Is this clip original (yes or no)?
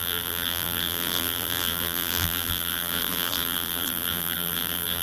no